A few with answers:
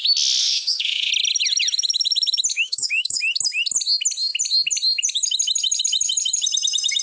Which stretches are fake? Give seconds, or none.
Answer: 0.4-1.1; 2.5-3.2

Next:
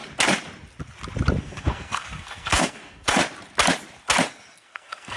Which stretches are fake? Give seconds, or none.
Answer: 1.4-3.2; 4.3-5.2

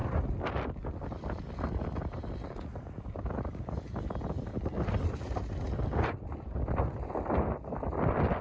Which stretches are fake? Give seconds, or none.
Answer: 0.0-8.4

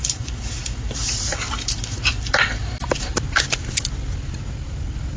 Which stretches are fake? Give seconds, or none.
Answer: 0.0-3.1

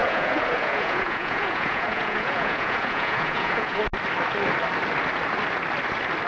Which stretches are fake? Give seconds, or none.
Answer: 0.0-3.8

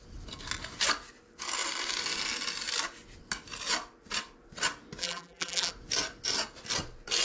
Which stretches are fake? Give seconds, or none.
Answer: 5.0-5.7

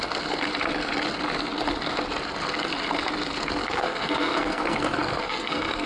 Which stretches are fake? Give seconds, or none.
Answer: 3.6-5.9